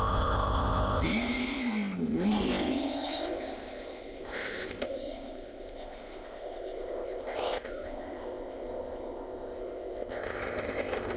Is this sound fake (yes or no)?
yes